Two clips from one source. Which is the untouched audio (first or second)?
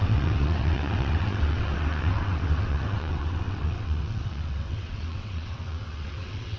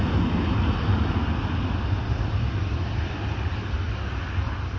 second